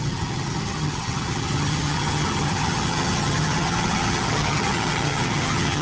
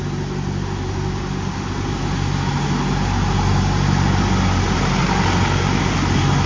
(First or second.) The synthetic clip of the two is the first